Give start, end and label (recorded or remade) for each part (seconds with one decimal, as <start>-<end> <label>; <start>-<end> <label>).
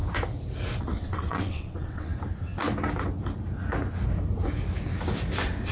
0.0-0.8 recorded; 0.8-2.1 remade; 2.1-5.7 recorded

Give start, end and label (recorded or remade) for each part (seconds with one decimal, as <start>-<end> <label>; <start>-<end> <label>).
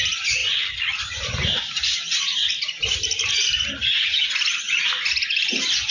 0.0-5.9 recorded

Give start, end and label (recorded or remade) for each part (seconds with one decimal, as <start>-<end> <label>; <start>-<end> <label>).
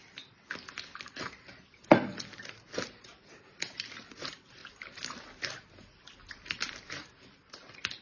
0.0-0.9 recorded; 0.9-2.4 remade; 2.4-4.6 recorded; 4.6-5.4 remade; 5.4-8.0 recorded